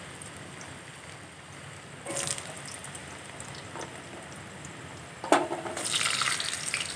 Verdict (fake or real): real